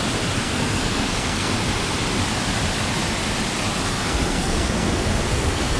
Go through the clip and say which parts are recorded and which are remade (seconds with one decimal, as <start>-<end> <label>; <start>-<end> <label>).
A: 0.0-0.4 recorded; 0.4-1.5 remade; 1.5-3.9 recorded; 3.9-5.8 remade